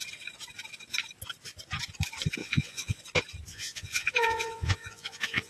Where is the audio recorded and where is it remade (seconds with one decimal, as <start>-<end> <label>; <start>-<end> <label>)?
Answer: 0.0-2.4 recorded; 2.4-3.0 remade; 3.0-3.5 recorded; 3.5-5.5 remade